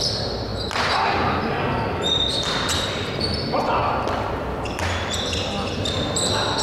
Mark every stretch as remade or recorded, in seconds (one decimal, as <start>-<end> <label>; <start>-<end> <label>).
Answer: 0.0-3.8 recorded; 3.8-5.5 remade; 5.5-6.6 recorded